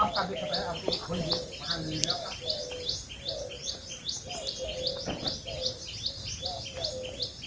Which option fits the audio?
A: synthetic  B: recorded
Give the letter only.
B